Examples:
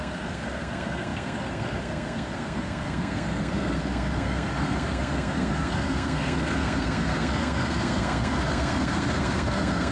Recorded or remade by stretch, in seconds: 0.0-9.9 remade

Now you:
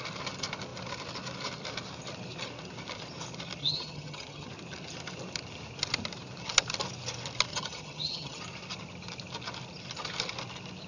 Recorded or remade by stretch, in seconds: 0.0-3.6 recorded; 3.6-4.5 remade; 4.5-7.5 recorded; 7.5-8.4 remade; 8.4-10.9 recorded

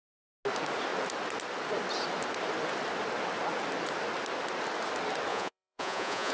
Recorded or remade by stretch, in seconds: 0.0-5.3 recorded; 5.3-6.3 remade